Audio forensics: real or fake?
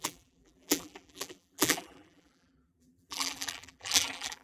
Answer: fake